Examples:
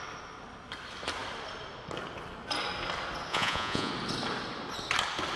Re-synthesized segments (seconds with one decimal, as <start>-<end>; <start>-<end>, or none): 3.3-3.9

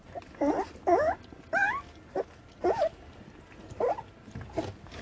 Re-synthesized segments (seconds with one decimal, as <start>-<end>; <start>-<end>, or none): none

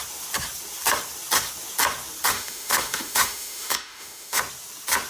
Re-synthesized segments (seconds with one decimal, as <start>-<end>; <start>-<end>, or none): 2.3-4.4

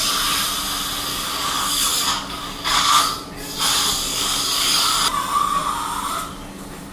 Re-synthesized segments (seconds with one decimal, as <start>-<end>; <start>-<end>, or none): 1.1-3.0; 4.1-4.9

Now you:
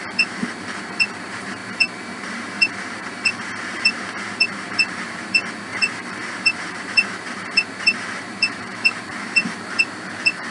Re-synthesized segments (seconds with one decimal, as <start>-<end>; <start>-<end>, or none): 0.0-10.5

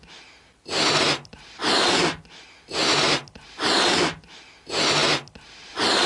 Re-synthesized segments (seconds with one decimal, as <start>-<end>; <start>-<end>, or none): none

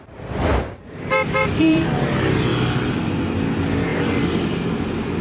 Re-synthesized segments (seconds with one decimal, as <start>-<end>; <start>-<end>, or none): 0.5-2.0

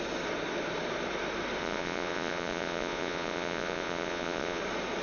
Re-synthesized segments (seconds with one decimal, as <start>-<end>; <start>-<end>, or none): 1.6-4.6